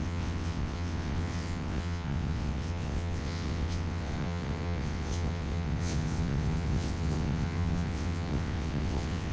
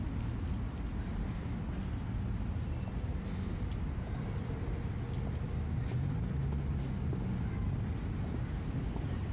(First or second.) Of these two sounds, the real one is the second